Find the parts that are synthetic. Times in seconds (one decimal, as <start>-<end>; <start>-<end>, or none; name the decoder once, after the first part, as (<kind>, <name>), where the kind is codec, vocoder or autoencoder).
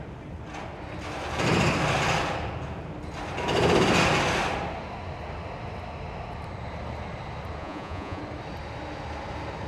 7.6-8.2 (vocoder, Vocos)